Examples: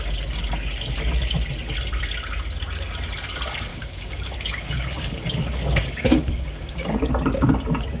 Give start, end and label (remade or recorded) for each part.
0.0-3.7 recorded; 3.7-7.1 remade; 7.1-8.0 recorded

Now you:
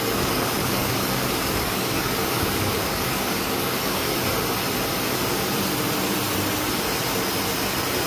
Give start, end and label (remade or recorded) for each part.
0.0-4.1 remade; 4.1-8.1 recorded

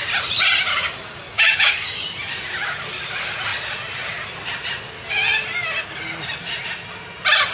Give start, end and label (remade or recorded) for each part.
0.0-0.7 recorded; 0.7-2.0 remade; 2.0-7.5 recorded

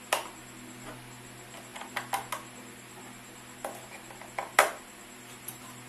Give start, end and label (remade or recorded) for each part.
0.0-5.9 recorded

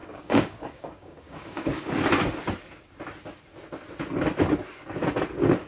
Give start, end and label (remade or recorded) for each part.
0.0-1.9 remade; 1.9-5.7 recorded

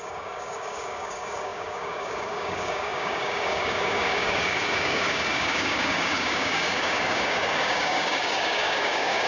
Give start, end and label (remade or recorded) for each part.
0.0-9.3 remade

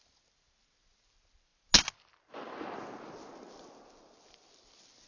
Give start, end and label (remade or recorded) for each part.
0.0-5.1 recorded